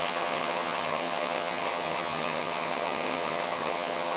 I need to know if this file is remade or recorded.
remade